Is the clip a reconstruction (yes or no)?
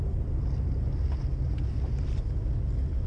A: no